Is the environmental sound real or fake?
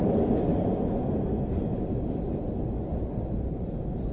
real